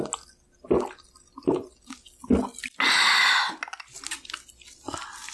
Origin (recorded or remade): recorded